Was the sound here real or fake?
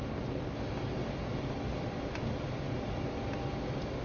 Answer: real